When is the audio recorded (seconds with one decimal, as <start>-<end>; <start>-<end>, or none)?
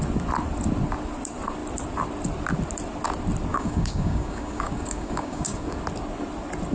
0.0-3.5; 5.8-6.7